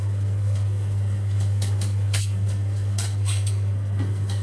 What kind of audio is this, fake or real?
fake